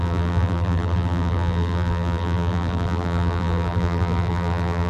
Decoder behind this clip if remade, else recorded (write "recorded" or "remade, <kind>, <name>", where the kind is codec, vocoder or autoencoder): remade, vocoder, BigVGAN v2